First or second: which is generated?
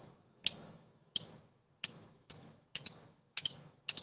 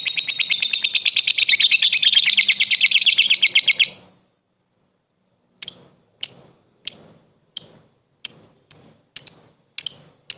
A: first